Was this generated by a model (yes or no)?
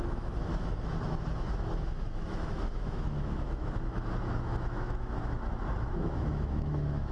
yes